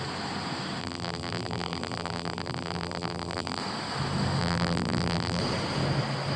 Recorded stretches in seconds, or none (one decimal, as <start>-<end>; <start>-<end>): 0.0-0.8; 3.6-4.4; 5.4-6.4